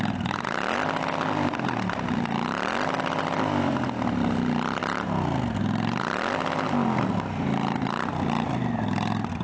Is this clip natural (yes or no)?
yes